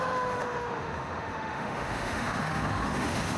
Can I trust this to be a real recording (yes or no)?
no